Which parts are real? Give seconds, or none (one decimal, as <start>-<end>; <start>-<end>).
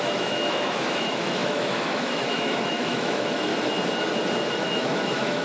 3.5-4.5